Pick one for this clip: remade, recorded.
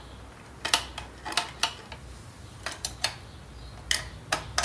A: recorded